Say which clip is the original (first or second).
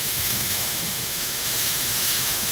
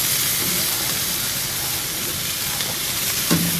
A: second